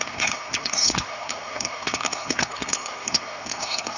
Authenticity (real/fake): fake